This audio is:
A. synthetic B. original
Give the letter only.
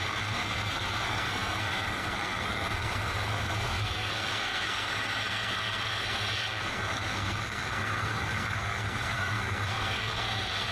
A